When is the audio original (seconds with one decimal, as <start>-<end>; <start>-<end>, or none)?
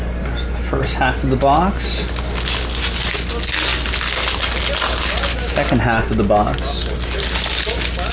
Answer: 0.0-8.1